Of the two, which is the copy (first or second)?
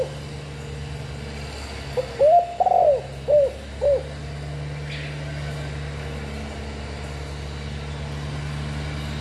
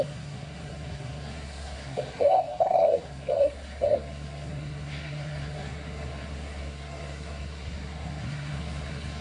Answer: second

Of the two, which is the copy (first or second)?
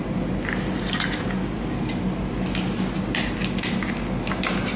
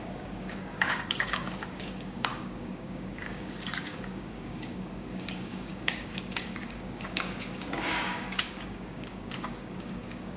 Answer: second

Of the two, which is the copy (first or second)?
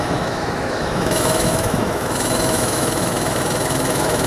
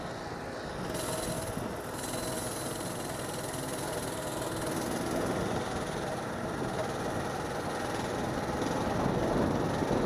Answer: first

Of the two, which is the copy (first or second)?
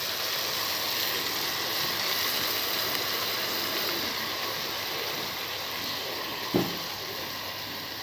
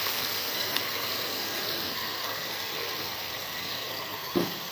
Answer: second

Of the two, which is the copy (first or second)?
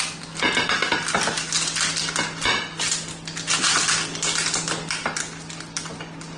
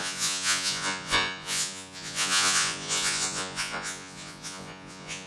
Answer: second